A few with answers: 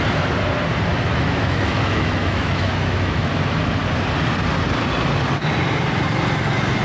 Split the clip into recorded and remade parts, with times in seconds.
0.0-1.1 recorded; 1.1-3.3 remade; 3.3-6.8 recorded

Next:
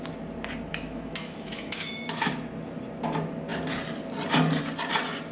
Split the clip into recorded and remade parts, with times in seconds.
0.0-0.7 recorded; 0.7-2.3 remade; 2.3-5.3 recorded

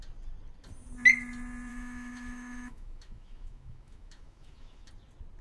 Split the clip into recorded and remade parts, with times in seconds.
0.0-1.7 recorded; 1.7-4.9 remade; 4.9-5.4 recorded